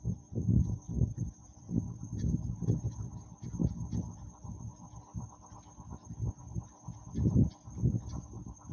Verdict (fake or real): real